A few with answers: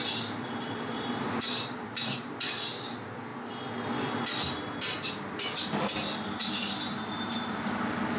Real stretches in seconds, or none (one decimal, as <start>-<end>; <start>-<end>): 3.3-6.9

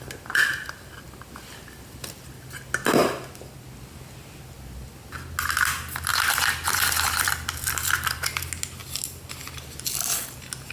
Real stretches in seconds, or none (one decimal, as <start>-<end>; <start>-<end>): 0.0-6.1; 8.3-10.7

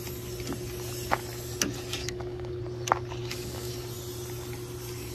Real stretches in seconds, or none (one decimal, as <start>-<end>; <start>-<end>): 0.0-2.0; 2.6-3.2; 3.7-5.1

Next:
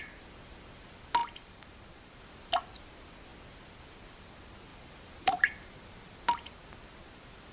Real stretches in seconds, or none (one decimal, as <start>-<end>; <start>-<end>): 0.0-1.2; 2.2-4.7; 6.2-7.5

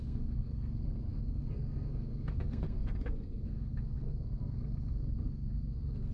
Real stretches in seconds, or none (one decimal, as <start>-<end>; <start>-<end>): none

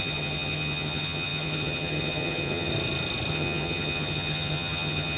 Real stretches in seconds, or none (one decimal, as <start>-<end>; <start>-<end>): 2.7-3.3

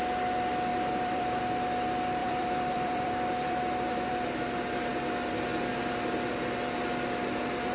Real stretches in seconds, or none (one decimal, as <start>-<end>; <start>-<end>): 0.0-0.7; 1.4-2.2; 4.1-7.7

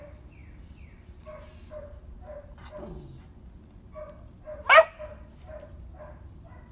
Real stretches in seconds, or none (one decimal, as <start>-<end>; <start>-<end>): 0.0-6.7